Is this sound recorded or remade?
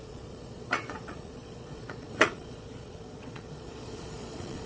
remade